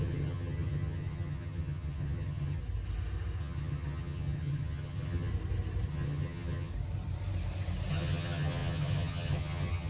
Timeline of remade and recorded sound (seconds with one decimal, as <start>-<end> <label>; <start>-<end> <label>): 0.0-2.6 remade; 2.6-3.4 recorded; 3.4-5.3 remade; 5.3-5.9 recorded; 5.9-6.7 remade; 6.7-7.9 recorded; 7.9-9.9 remade